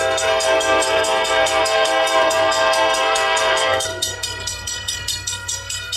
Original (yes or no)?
no